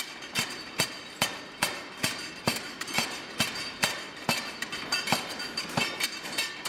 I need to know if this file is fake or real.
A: fake